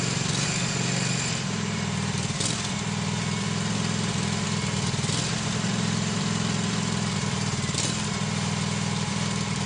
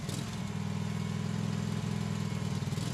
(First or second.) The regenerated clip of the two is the first